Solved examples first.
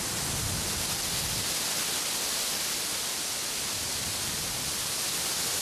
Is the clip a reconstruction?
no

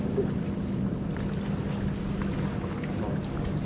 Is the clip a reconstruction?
no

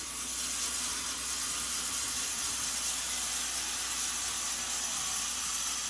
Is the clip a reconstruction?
no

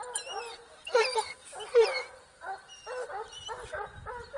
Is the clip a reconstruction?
no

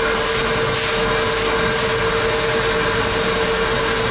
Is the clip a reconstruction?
no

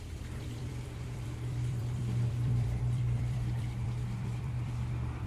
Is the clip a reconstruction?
yes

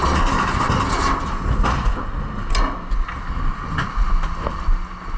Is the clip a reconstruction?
no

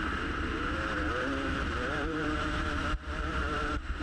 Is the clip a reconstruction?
yes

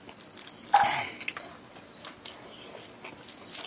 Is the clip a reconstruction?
no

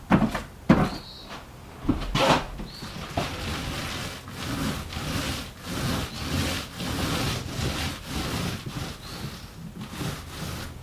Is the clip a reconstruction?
no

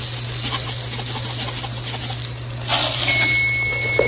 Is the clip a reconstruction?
no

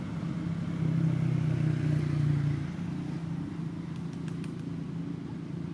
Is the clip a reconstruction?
no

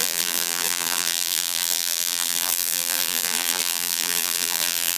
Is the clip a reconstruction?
yes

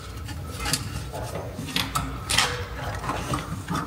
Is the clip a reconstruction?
no